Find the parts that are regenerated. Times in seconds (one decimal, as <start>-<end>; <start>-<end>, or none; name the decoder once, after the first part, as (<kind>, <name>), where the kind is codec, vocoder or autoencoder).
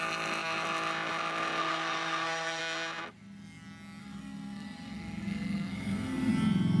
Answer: 1.6-2.6 (codec, SNAC); 4.0-6.3